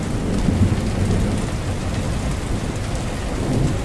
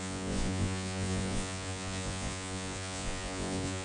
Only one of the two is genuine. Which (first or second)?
first